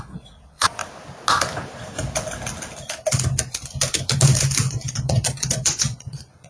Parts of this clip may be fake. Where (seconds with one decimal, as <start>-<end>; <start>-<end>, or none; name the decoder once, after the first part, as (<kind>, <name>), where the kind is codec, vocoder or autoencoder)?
0.0-0.8 (vocoder, Vocos); 4.7-6.5